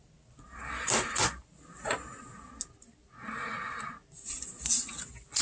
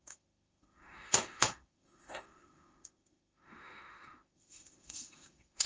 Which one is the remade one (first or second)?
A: second